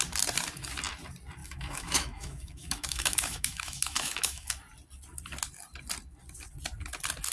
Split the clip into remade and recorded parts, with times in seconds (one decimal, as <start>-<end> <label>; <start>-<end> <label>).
0.0-1.4 recorded; 1.4-4.5 remade; 4.5-7.3 recorded